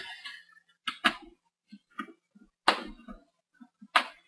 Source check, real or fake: real